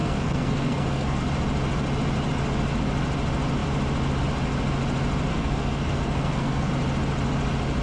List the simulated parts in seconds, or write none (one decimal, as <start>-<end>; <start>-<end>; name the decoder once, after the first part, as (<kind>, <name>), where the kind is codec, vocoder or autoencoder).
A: 0.0-1.2 (codec, SNAC); 5.3-6.7